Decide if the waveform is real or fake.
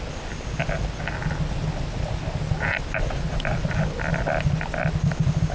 real